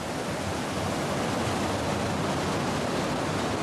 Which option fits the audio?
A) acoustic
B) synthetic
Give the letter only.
A